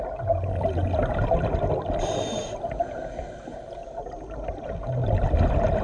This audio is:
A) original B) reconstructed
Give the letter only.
A